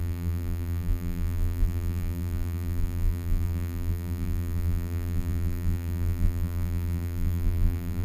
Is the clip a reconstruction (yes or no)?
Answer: yes